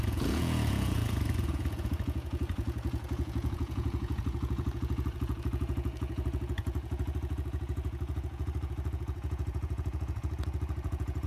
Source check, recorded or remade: remade